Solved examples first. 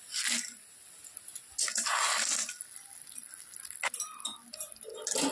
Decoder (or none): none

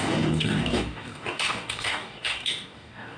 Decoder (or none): codec, DAC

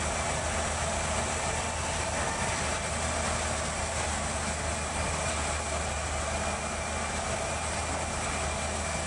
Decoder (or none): none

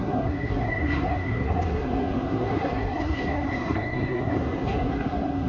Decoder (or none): codec, SNAC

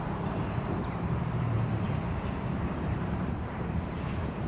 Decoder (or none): vocoder, BigVGAN v2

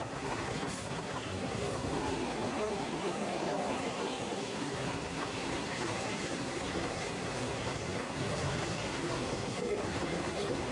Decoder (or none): codec, SNAC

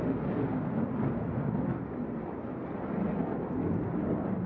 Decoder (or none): vocoder, BigVGAN v2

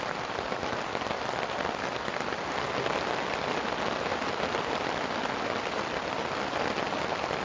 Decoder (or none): none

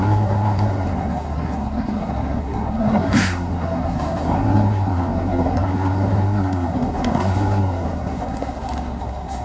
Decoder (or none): codec, SNAC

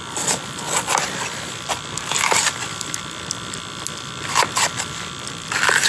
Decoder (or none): none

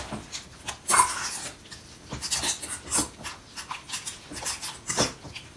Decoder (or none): none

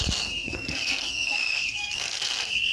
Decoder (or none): codec, SNAC